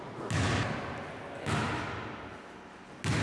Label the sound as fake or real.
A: real